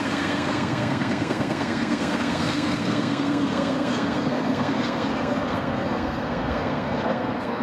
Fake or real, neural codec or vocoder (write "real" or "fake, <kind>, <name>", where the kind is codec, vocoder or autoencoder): fake, codec, SNAC